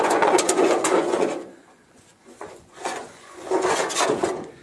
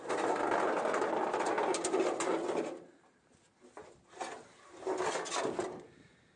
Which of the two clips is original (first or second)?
second